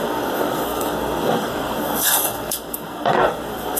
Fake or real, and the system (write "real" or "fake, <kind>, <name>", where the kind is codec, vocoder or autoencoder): fake, codec, SNAC